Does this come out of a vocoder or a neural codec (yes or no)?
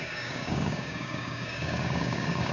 yes